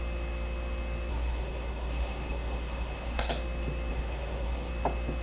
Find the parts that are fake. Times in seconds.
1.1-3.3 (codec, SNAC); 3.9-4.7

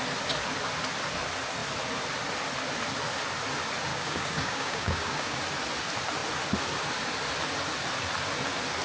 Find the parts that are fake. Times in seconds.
3.9-5.4 (codec, DAC)

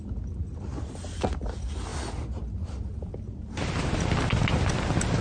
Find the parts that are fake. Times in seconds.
none

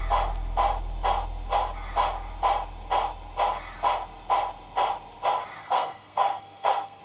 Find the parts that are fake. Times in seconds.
5.6-7.0 (codec, SNAC)

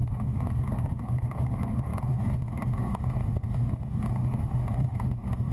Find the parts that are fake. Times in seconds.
0.0-5.5 (autoencoder, DAC-VAE)

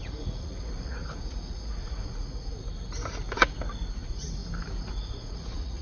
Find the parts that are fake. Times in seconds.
0.0-2.5 (vocoder, Vocos); 4.0-4.4; 4.9-5.8